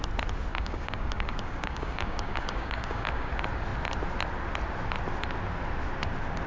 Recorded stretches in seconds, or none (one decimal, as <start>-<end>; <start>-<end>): 0.0-0.5; 3.3-6.5